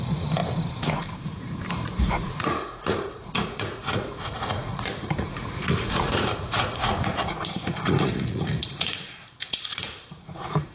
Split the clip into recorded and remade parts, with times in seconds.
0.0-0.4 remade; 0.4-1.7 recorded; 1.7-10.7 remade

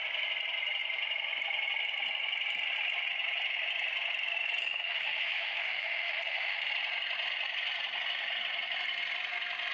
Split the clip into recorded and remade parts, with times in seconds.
0.0-4.6 recorded; 4.6-6.7 remade; 6.7-9.7 recorded

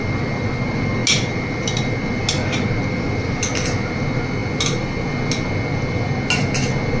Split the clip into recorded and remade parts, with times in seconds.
0.0-7.0 recorded

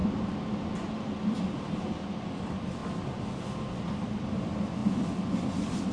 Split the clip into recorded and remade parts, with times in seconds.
0.0-2.8 remade; 2.8-3.8 recorded; 3.8-4.8 remade; 4.8-5.5 recorded; 5.5-5.9 remade

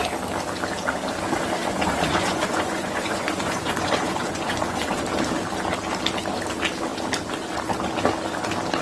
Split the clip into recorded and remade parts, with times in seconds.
0.0-1.6 recorded; 1.6-5.0 remade; 5.0-8.8 recorded